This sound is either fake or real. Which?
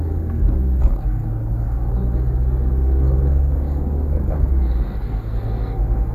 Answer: fake